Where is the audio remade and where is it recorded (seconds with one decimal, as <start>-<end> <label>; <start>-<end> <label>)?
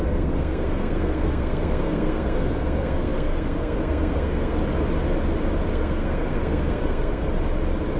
0.0-4.6 remade; 4.6-5.7 recorded; 5.7-7.2 remade; 7.2-8.0 recorded